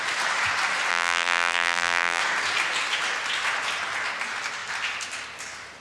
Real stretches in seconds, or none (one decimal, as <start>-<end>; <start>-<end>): 0.0-0.9; 2.2-5.8